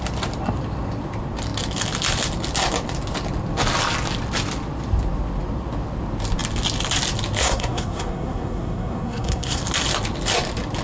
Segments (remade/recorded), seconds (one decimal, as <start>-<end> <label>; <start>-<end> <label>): 0.0-7.4 recorded; 7.4-9.6 remade; 9.6-10.8 recorded